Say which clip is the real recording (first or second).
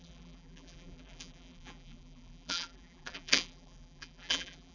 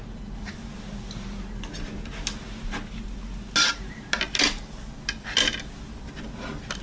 second